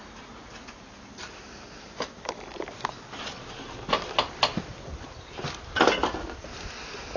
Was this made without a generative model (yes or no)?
yes